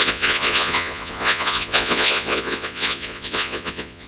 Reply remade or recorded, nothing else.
remade